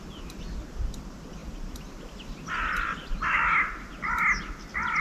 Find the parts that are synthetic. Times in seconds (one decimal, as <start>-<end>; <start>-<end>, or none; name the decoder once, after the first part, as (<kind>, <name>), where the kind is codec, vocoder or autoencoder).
1.4-2.7 (vocoder, BigVGAN v2)